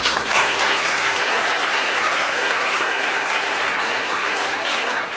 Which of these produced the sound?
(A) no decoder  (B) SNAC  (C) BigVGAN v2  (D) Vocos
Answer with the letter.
B